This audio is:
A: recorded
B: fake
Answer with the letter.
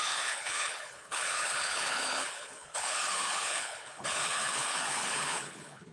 B